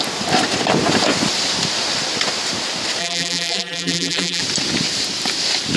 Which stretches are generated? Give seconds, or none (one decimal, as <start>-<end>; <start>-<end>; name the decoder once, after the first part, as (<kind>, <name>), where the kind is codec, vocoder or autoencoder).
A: 3.0-4.4 (vocoder, BigVGAN v2)